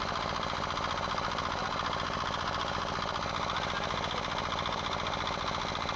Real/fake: real